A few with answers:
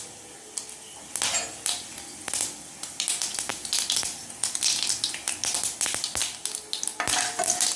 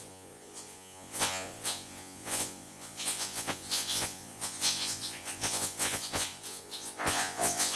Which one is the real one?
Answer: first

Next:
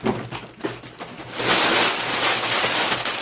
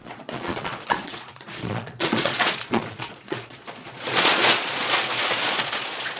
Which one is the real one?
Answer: first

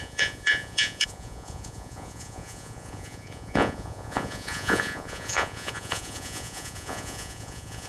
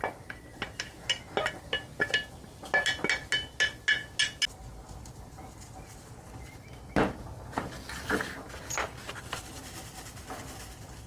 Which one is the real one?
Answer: second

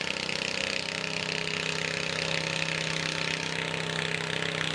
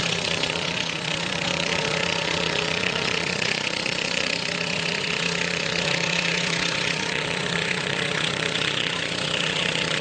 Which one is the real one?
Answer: first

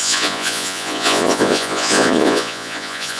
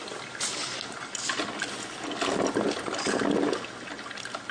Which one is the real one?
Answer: second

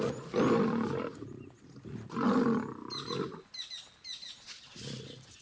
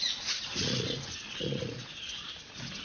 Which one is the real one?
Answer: first